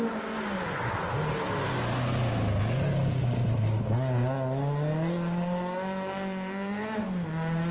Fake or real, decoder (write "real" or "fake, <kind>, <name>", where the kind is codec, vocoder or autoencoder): real